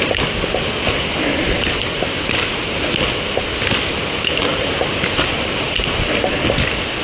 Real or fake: real